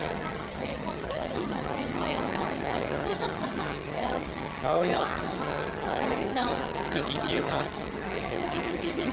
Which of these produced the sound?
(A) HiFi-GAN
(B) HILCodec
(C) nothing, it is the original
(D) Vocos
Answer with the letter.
A